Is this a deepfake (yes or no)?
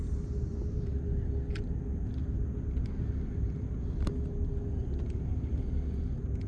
no